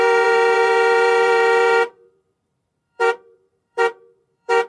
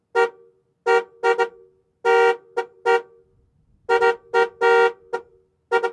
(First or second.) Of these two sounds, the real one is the second